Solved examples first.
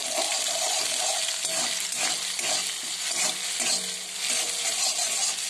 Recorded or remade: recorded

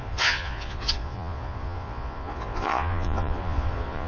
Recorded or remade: remade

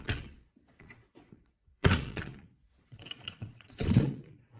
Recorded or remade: remade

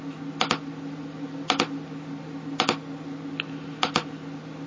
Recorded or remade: recorded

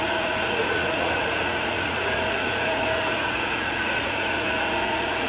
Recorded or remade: remade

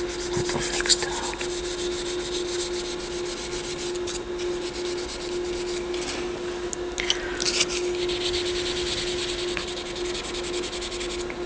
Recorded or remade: recorded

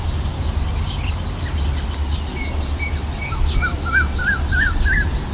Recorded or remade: recorded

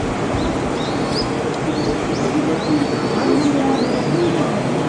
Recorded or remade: recorded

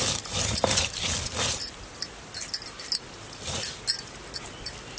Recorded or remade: recorded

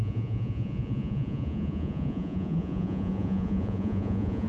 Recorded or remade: remade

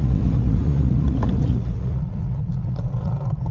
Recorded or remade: remade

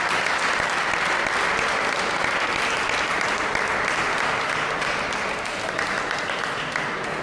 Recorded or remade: recorded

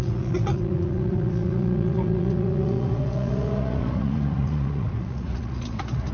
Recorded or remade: remade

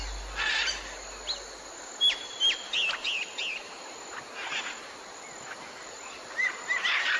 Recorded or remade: recorded